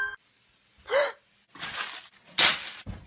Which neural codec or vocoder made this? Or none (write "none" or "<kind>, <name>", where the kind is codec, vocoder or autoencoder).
none